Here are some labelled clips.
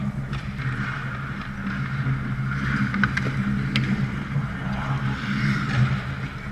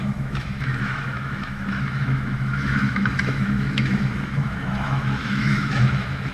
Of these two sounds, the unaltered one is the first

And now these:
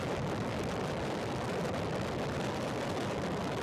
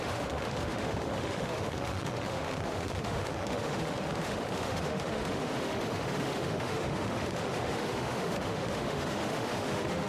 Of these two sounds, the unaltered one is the first